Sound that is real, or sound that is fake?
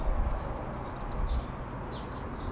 real